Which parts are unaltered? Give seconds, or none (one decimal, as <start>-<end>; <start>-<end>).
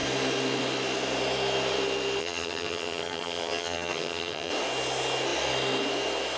0.0-2.2; 4.5-6.4